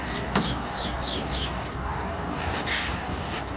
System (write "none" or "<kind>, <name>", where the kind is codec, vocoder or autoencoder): codec, DAC